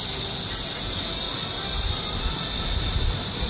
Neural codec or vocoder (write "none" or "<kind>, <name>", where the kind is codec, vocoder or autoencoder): none